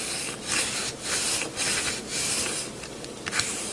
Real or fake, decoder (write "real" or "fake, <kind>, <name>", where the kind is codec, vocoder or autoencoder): real